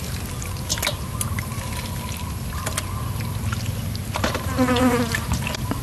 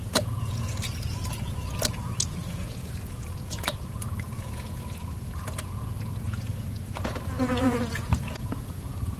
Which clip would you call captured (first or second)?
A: first